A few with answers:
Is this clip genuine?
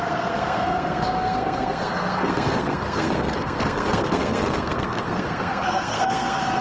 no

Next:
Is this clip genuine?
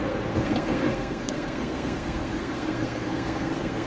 no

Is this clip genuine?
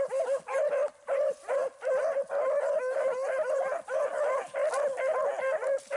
yes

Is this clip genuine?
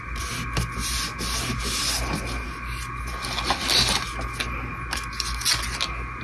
yes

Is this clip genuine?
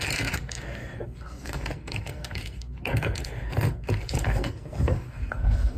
no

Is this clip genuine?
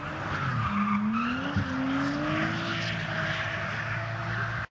yes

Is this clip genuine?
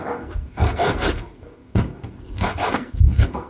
no